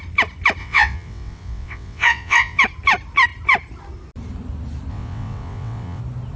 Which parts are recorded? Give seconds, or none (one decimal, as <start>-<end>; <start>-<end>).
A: 0.0-0.6; 2.6-4.9; 6.0-6.4